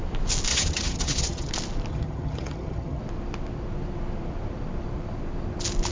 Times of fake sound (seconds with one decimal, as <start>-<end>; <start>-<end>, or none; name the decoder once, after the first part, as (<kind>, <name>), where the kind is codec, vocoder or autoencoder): 0.5-1.5 (vocoder, HiFi-GAN); 1.9-3.0